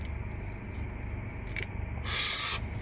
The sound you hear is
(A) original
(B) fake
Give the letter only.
A